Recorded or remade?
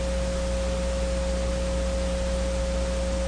recorded